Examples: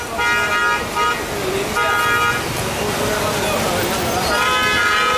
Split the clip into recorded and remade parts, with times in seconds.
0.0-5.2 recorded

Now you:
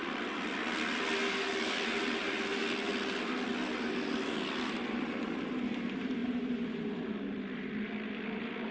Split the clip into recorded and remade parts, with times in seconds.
0.0-6.2 recorded; 6.2-7.1 remade; 7.1-8.7 recorded

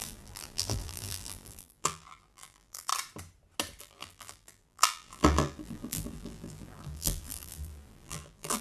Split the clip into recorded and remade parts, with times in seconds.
0.0-2.9 remade; 2.9-3.8 recorded; 3.8-8.6 remade

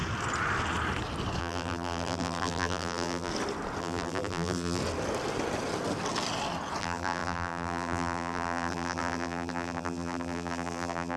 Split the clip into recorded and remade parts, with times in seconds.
0.0-1.4 recorded; 1.4-3.3 remade; 3.3-3.8 recorded; 3.8-4.8 remade; 4.8-6.8 recorded; 6.8-11.2 remade